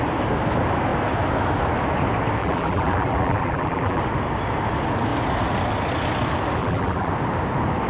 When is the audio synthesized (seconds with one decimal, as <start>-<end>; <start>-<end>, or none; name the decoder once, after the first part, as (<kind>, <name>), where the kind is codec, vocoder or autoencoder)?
2.4-4.0 (vocoder, BigVGAN v2); 6.6-7.1